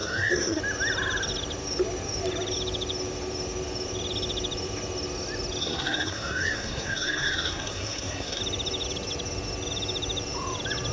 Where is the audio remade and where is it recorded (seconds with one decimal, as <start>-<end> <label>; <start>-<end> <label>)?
0.0-0.6 remade; 0.6-5.6 recorded; 5.6-8.4 remade; 8.4-10.9 recorded